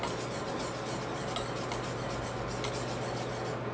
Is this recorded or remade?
recorded